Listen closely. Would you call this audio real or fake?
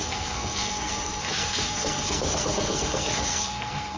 fake